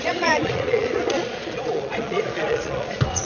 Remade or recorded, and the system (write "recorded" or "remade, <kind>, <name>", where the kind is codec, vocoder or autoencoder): remade, vocoder, Vocos